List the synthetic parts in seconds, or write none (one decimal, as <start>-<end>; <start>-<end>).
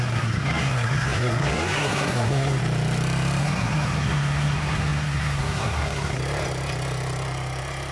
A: 0.0-2.6; 3.4-6.2